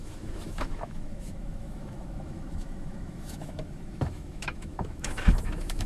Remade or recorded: remade